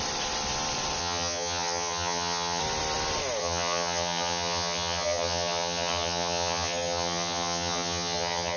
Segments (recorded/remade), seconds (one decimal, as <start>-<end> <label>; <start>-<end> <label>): 0.0-1.0 recorded; 1.0-2.6 remade; 2.6-3.4 recorded; 3.4-8.6 remade